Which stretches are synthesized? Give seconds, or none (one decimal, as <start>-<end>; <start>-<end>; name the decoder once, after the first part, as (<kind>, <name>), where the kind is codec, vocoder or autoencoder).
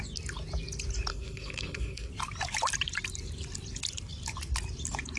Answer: 1.1-2.1 (codec, SNAC)